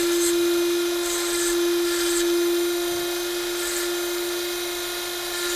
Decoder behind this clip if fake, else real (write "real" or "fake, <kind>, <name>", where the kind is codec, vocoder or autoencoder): real